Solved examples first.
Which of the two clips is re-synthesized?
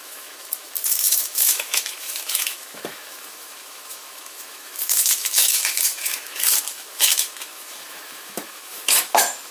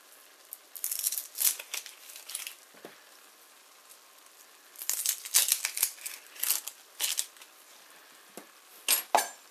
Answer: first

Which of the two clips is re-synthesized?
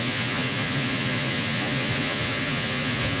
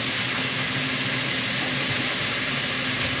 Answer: first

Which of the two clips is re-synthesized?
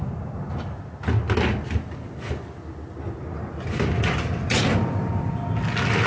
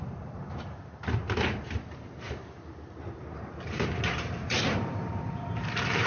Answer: second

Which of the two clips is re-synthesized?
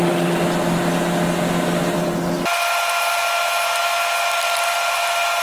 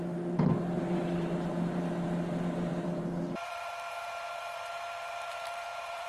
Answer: second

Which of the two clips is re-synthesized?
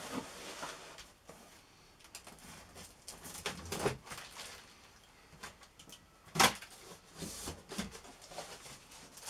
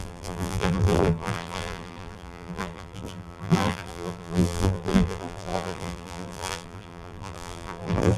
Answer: second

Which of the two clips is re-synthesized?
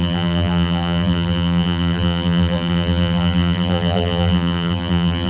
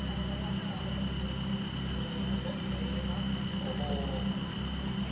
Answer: first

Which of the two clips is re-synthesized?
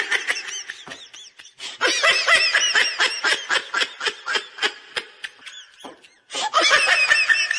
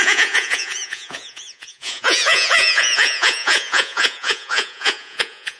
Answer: second